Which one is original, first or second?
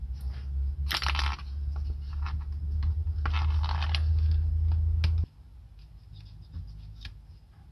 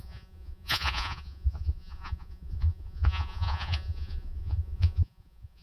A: first